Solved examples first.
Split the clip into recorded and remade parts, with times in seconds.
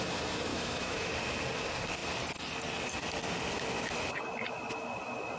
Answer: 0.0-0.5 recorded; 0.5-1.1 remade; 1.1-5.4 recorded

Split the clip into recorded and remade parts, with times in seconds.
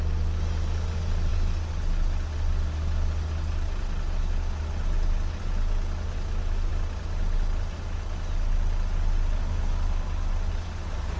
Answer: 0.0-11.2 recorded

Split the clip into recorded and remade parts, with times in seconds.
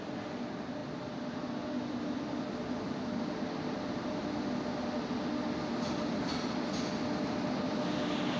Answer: 0.0-8.4 recorded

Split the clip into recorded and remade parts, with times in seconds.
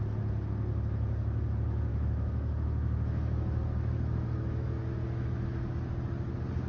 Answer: 0.0-1.9 recorded; 1.9-5.7 remade; 5.7-6.7 recorded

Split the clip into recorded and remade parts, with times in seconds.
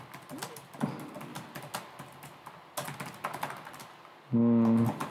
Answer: 0.0-5.1 recorded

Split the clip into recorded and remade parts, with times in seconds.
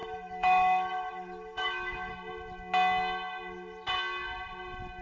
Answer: 0.0-2.1 remade; 2.1-5.0 recorded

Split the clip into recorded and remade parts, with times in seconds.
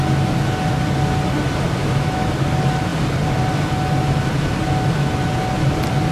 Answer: 0.0-1.8 recorded; 1.8-2.3 remade; 2.3-6.1 recorded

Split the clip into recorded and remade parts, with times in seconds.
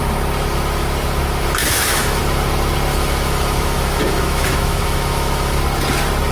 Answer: 0.0-1.6 recorded; 1.6-2.2 remade; 2.2-2.9 recorded; 2.9-5.6 remade; 5.6-6.3 recorded